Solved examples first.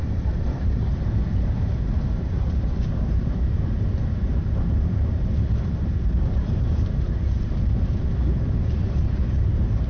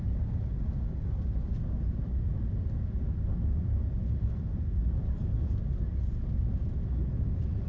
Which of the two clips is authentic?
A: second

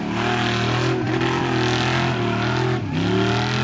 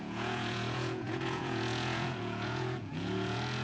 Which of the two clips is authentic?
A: first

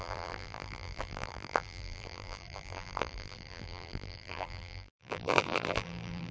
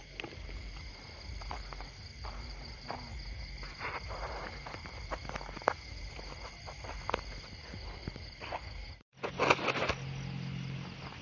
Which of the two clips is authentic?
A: second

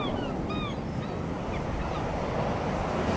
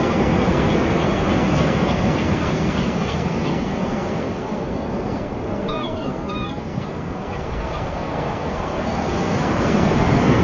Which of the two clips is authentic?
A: first